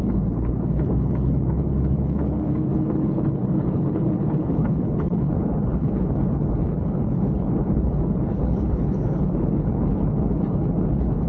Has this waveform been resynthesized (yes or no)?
yes